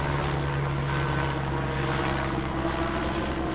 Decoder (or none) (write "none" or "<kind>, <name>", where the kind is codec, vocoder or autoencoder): none